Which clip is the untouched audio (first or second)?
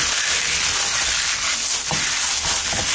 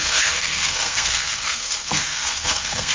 first